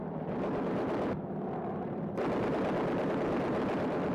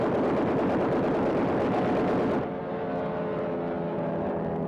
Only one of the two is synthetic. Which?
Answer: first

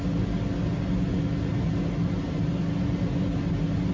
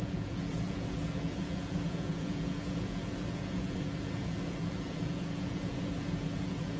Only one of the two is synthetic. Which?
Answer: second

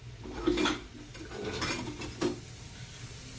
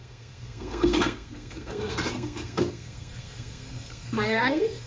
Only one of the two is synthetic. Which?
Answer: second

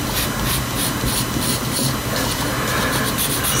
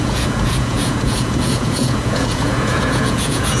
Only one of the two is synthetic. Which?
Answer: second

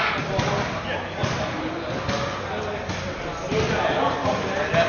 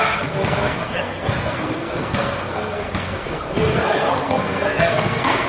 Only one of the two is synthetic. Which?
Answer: second